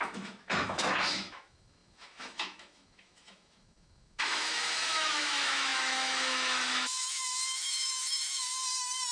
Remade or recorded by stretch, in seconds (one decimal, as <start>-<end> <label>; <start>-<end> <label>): 0.0-9.1 remade